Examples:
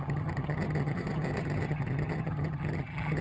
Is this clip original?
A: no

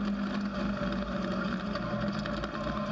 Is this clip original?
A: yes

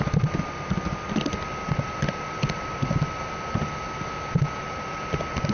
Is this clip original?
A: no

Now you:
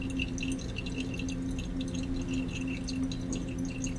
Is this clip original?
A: yes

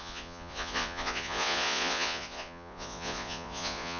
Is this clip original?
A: no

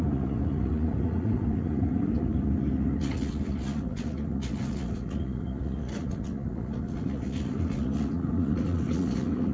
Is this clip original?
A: no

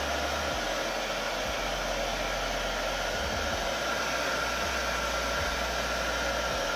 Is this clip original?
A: yes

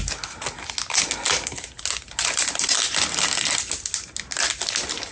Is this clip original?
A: yes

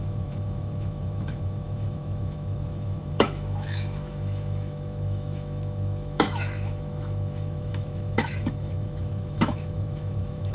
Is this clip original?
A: no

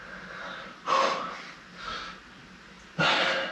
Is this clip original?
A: yes